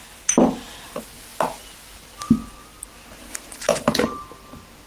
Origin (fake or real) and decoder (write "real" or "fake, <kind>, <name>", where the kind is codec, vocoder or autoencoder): real